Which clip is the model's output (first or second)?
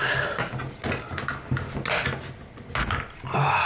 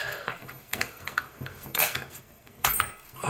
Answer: second